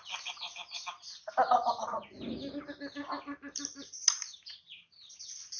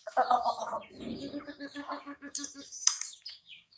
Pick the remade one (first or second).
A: second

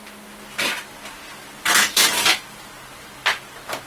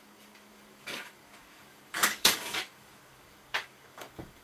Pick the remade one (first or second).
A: second